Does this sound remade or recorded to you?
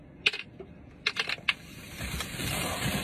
recorded